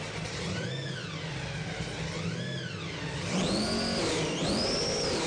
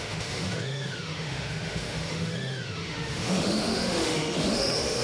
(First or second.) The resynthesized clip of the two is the second